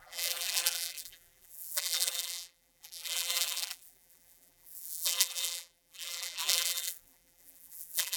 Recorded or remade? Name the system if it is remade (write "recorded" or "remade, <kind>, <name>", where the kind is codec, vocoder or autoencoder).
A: remade, vocoder, BigVGAN v2